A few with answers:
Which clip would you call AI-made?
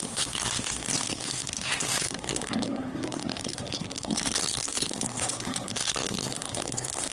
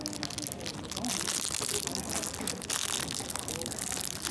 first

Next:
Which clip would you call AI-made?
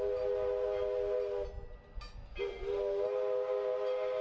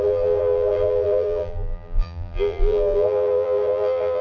second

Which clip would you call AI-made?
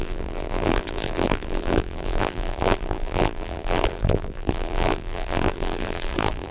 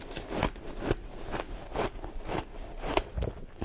first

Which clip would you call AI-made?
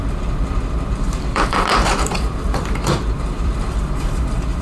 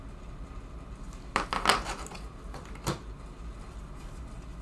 first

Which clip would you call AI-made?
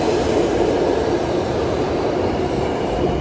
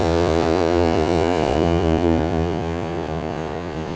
second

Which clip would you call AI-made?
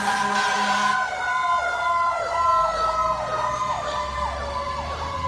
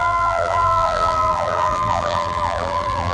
second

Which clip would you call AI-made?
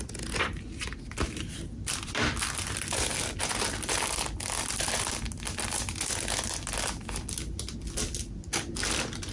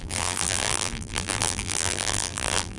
second